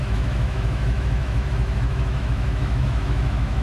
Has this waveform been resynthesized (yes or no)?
yes